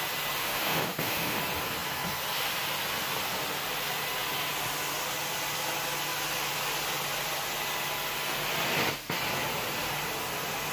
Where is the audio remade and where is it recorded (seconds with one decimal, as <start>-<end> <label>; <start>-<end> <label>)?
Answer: 0.0-0.4 recorded; 0.4-1.4 remade; 1.4-10.7 recorded